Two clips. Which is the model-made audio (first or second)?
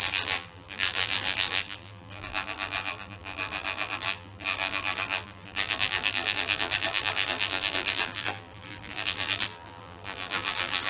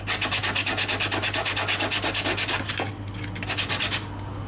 first